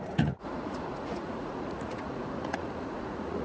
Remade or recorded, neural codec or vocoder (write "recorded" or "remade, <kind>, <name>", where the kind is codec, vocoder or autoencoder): remade, vocoder, Vocos